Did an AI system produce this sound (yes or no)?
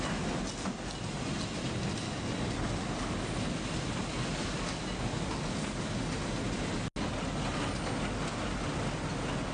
no